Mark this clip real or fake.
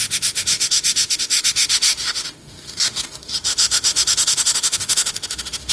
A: fake